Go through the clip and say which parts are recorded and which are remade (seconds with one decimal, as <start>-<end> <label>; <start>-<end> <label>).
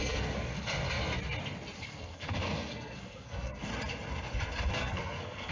0.0-0.5 remade; 0.5-1.8 recorded; 1.8-3.7 remade; 3.7-4.7 recorded; 4.7-5.5 remade